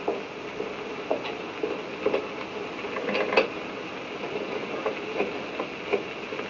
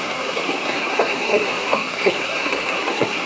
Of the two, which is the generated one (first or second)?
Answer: second